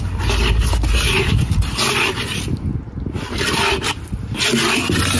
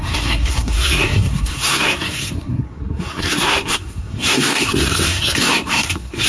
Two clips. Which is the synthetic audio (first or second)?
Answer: second